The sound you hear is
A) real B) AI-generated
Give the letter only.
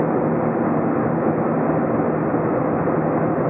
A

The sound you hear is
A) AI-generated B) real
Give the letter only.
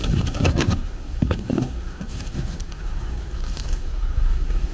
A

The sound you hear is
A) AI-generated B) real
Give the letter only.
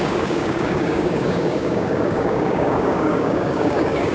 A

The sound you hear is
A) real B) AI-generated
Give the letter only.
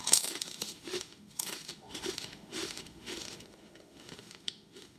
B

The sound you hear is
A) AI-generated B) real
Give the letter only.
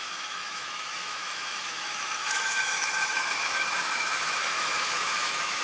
A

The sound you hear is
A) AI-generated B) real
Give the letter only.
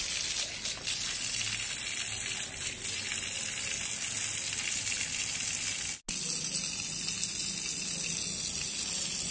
B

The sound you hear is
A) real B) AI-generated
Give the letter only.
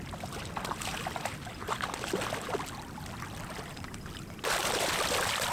A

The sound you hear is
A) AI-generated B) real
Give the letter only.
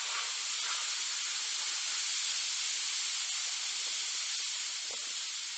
B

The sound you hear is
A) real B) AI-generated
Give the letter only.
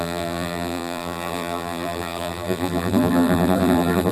B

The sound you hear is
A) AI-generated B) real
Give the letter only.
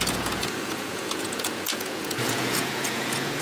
A